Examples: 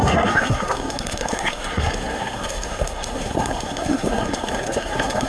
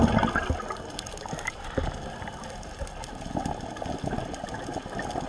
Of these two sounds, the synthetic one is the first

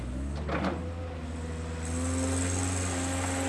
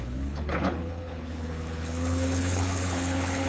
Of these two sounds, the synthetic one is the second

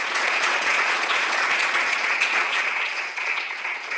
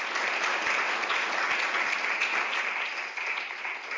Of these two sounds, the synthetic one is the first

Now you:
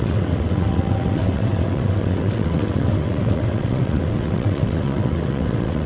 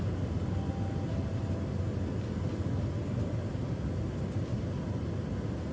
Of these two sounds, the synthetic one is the first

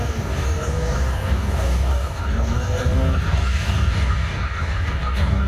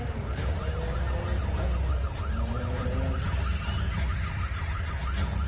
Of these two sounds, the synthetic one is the first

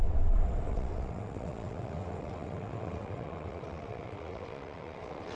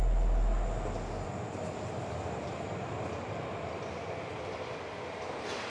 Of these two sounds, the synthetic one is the first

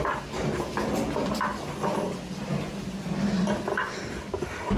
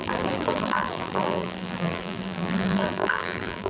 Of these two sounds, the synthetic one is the second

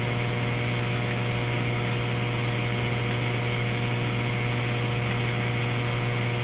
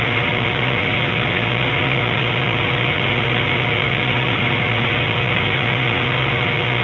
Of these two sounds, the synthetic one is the second